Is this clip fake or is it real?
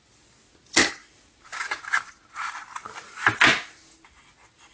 real